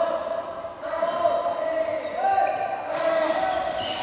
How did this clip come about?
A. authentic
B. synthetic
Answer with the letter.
A